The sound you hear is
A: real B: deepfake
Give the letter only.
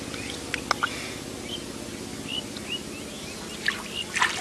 A